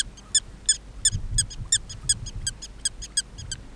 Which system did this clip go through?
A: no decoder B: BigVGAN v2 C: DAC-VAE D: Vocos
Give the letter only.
A